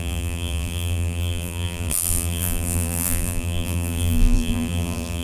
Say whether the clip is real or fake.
fake